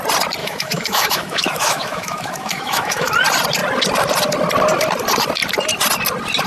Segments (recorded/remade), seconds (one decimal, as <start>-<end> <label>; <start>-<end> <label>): 0.0-0.4 recorded; 0.4-3.1 remade; 3.1-6.5 recorded